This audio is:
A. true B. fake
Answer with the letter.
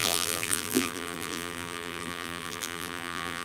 B